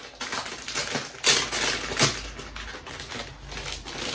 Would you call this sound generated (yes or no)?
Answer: no